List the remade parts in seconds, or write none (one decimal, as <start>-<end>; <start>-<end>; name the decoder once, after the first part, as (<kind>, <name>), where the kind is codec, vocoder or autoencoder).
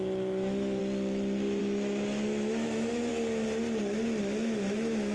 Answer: 0.0-0.8 (autoencoder, DAC-VAE); 1.6-3.1; 4.2-5.1